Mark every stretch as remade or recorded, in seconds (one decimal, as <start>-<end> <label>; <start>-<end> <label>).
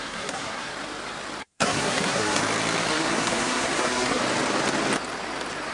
0.0-0.7 remade; 0.7-1.4 recorded; 1.4-2.4 remade; 2.4-2.9 recorded; 2.9-4.2 remade; 4.2-5.7 recorded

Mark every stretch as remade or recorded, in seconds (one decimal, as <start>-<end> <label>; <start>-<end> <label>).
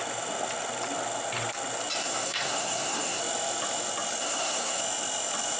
0.0-2.0 recorded; 2.0-3.2 remade; 3.2-4.2 recorded; 4.2-4.8 remade; 4.8-5.6 recorded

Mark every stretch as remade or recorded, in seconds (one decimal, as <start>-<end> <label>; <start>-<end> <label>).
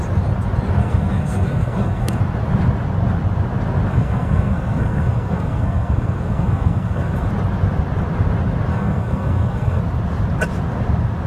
0.0-0.8 recorded; 0.8-2.2 remade; 2.2-3.9 recorded; 3.9-7.3 remade; 7.3-8.7 recorded; 8.7-9.8 remade; 9.8-11.3 recorded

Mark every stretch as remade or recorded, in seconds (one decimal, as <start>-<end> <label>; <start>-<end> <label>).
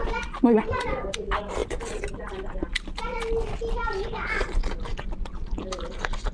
0.0-6.3 recorded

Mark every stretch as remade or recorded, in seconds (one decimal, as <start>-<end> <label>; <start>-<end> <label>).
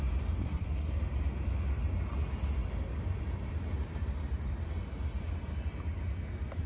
0.0-0.4 recorded; 0.4-0.9 remade; 0.9-6.7 recorded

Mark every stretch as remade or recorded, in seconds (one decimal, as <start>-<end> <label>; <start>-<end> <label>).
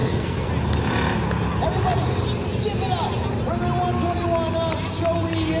0.0-0.5 remade; 0.5-5.6 recorded